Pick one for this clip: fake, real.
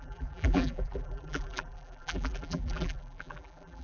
fake